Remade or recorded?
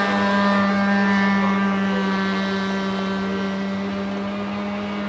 recorded